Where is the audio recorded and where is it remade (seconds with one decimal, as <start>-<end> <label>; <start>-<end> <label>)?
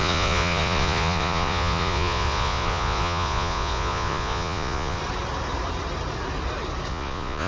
0.0-5.0 remade; 5.0-6.9 recorded; 6.9-7.5 remade